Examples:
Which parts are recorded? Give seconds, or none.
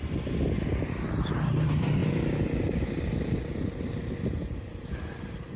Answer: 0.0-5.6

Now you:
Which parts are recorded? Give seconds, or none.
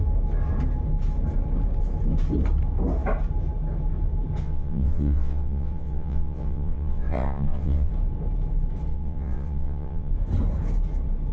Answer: 0.0-4.4; 7.9-8.9; 10.1-11.3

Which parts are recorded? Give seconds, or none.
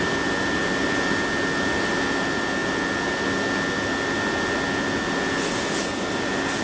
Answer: 0.0-6.6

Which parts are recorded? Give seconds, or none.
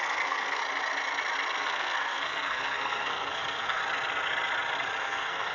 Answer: 0.6-1.6; 3.8-5.0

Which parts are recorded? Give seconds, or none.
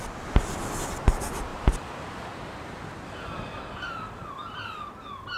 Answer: 0.0-1.5; 4.3-5.4